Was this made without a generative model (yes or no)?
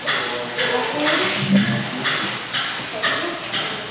yes